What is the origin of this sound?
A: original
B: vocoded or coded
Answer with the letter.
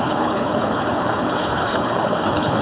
B